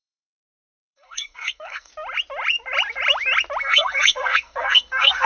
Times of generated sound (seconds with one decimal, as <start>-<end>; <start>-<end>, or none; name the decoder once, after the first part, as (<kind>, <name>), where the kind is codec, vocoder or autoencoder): 0.0-1.9 (codec, SNAC); 3.6-5.3